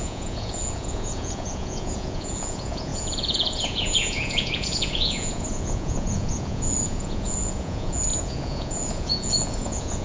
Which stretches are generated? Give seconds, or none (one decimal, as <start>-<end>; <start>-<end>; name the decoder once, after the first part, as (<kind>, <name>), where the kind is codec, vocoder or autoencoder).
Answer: 0.0-10.0 (vocoder, Vocos)